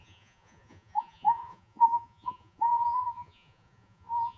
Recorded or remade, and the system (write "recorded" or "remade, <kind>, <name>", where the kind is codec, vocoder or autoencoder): remade, vocoder, Vocos